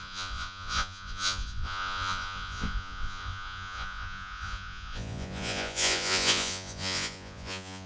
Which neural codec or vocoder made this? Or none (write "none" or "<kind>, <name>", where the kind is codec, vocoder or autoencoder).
vocoder, Vocos